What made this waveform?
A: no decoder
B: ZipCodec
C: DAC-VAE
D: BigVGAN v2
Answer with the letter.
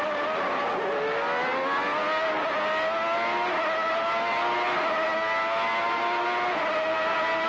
A